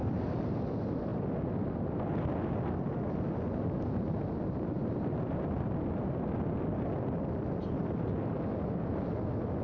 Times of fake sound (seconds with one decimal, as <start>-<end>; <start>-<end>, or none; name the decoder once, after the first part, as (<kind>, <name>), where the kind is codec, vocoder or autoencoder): 0.0-0.6 (vocoder, BigVGAN v2)